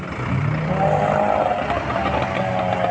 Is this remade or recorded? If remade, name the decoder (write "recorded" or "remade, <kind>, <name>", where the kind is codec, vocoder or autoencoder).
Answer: recorded